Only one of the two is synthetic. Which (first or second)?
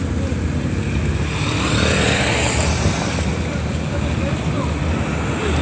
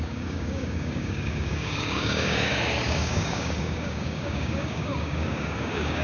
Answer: second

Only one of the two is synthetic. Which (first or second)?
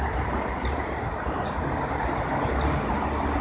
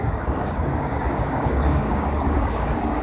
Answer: second